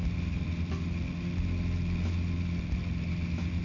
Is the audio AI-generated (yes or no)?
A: no